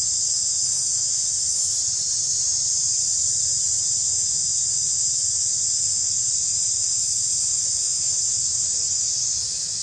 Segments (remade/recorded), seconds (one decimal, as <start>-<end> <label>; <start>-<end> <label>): 0.0-1.8 remade; 1.8-3.8 recorded; 3.8-9.8 remade